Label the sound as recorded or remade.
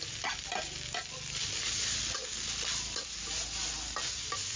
recorded